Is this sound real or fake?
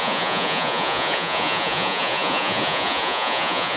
fake